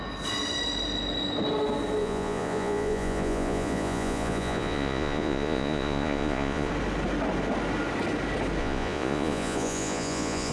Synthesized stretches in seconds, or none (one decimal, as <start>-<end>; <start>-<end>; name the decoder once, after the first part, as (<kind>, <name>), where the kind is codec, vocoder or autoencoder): 2.0-6.7 (vocoder, Vocos); 8.6-10.5